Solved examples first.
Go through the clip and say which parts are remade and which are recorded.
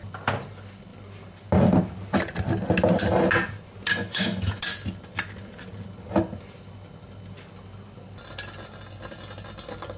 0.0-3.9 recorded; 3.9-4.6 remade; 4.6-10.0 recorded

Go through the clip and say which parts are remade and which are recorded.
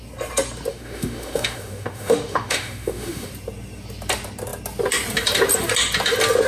0.0-0.7 recorded; 0.7-3.3 remade; 3.3-6.5 recorded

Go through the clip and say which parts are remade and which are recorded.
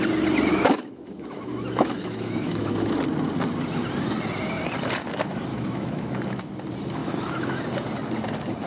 0.0-0.5 recorded; 0.5-3.0 remade; 3.0-5.5 recorded; 5.5-6.4 remade; 6.4-7.0 recorded; 7.0-7.6 remade; 7.6-8.7 recorded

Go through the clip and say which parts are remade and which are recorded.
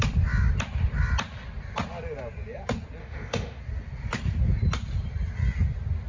0.0-3.0 recorded; 3.0-3.6 remade; 3.6-6.1 recorded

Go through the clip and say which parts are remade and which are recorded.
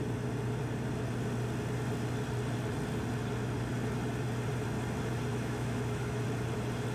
0.0-5.3 recorded; 5.3-6.2 remade; 6.2-6.9 recorded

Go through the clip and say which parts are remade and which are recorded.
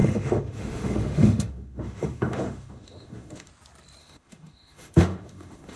0.0-3.5 remade; 3.5-4.0 recorded; 4.0-5.8 remade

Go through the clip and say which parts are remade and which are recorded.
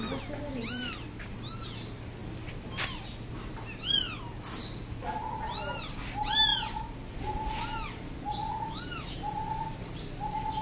0.0-10.6 recorded